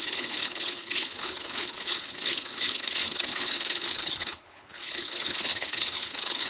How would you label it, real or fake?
fake